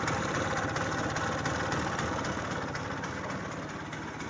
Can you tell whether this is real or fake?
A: real